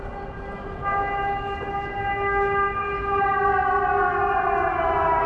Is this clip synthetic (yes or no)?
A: no